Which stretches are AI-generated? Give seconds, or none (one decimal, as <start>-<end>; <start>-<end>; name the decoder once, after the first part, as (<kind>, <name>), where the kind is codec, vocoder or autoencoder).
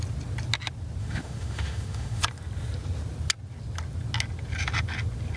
1.0-2.2 (autoencoder, DAC-VAE)